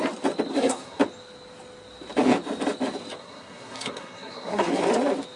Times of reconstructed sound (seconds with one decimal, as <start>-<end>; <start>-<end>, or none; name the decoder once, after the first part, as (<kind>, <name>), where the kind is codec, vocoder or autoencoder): 0.5-1.0 (codec, SNAC); 3.2-4.8